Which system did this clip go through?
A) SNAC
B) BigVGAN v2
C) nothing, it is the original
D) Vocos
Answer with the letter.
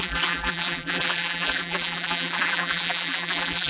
B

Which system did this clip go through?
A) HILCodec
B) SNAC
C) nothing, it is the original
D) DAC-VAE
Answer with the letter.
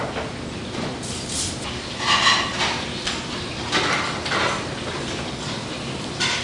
C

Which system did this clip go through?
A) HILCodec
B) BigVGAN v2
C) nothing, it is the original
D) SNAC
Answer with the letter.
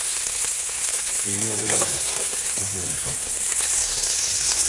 D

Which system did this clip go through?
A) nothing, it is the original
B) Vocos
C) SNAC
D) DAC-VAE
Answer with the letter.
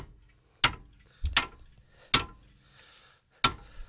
A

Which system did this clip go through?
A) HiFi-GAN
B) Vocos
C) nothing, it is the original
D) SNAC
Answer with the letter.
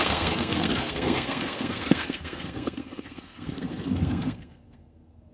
D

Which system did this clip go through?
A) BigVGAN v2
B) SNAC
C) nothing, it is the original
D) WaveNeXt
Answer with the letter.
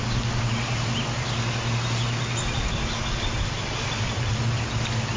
C